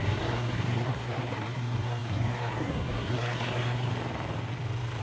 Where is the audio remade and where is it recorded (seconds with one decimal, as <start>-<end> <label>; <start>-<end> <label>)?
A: 0.0-3.9 remade; 3.9-5.0 recorded